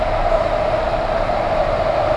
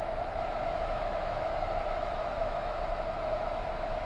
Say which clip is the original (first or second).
first